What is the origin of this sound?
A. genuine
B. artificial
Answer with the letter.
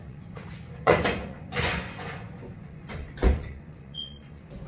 B